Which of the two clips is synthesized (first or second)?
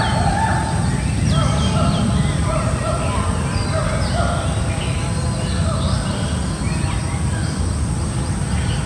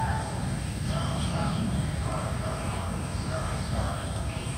second